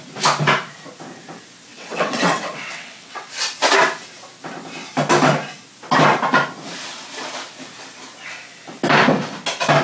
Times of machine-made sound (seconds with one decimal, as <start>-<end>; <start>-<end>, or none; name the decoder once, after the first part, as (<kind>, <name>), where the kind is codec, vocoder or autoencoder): 1.7-3.3 (vocoder, WaveNeXt)